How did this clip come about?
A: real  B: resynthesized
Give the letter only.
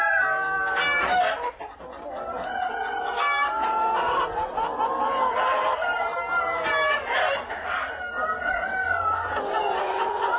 A